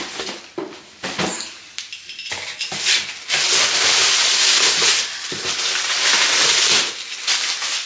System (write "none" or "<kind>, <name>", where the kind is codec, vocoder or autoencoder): none